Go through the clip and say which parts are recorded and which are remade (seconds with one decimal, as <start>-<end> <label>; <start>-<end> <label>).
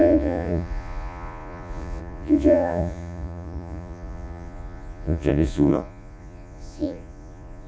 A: 0.0-7.7 remade